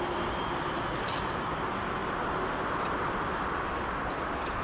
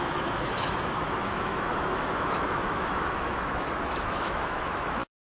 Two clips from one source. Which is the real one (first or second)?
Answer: first